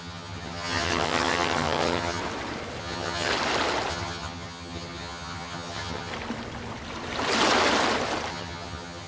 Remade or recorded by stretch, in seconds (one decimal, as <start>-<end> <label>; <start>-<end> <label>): 0.0-2.2 remade; 2.2-2.8 recorded; 2.8-3.3 remade; 3.3-3.9 recorded; 3.9-6.1 remade; 6.1-8.3 recorded; 8.3-9.1 remade